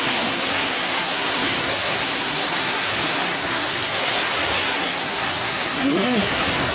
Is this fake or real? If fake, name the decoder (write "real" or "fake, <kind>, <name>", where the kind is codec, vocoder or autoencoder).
fake, codec, SNAC